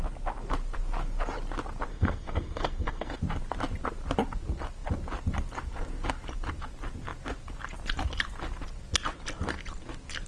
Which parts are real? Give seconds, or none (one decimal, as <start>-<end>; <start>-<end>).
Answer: 0.0-1.9; 3.2-10.3